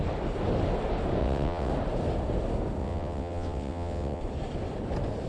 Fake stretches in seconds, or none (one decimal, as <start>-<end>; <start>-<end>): 1.2-1.7; 2.8-4.2